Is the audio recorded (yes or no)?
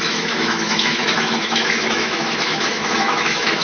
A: no